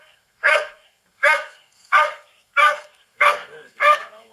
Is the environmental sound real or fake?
fake